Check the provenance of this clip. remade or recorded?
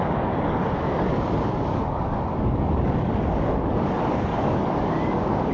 remade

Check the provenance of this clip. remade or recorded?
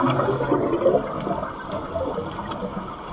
recorded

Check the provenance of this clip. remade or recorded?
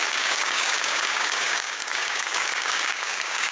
remade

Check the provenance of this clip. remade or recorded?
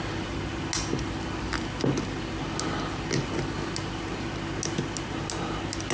recorded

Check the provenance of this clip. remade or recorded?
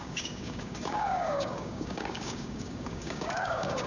remade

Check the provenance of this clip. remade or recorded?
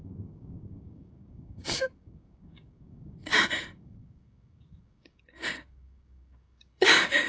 remade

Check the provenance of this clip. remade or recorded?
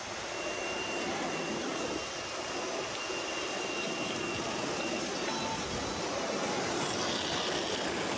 recorded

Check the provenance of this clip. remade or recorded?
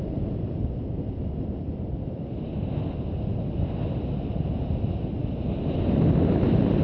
recorded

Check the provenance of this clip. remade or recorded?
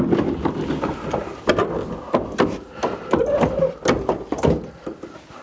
recorded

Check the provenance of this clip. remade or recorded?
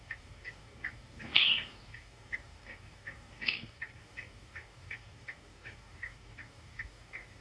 remade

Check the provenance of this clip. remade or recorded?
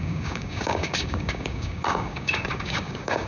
remade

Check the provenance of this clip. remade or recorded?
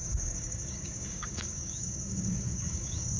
remade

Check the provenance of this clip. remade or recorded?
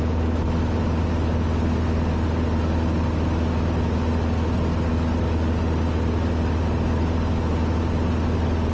recorded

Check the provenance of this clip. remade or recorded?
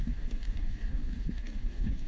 remade